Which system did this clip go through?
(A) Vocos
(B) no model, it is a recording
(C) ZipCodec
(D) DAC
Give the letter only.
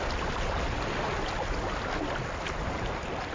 B